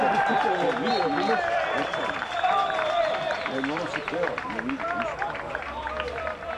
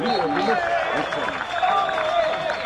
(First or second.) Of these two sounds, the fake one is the first